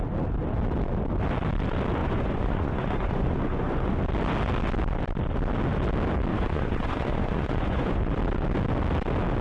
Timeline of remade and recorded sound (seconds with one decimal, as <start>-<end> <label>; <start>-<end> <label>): 0.0-2.0 recorded; 2.0-4.0 remade; 4.0-6.3 recorded; 6.3-8.0 remade; 8.0-9.4 recorded